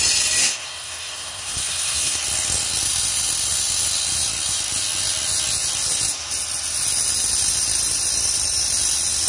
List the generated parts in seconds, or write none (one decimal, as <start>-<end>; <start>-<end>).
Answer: 0.4-2.2